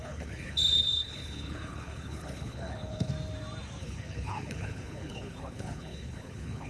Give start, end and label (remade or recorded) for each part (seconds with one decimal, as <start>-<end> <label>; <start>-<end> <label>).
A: 0.0-3.1 remade; 3.1-3.8 recorded; 3.8-6.7 remade